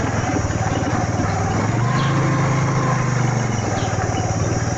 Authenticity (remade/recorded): recorded